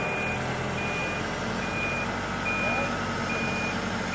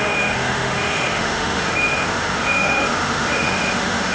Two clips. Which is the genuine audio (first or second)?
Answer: first